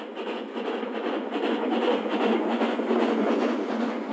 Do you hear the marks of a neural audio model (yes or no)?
yes